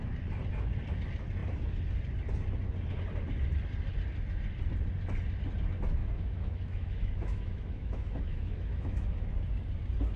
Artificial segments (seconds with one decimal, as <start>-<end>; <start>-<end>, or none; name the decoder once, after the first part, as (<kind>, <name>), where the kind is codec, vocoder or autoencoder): 6.0-9.3 (autoencoder, DAC-VAE)